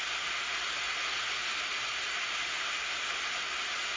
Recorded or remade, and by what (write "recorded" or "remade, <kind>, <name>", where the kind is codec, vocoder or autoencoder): recorded